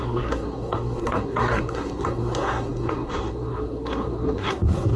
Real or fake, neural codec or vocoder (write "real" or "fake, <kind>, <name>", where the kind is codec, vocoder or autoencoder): fake, codec, SNAC